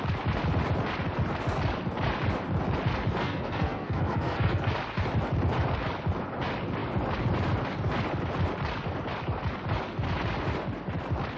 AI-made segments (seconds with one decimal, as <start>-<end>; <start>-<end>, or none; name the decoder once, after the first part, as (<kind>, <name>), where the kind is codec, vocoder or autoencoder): 3.2-4.7 (codec, SNAC)